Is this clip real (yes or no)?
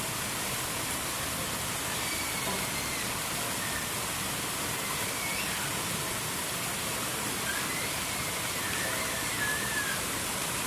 yes